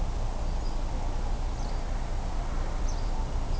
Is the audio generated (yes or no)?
no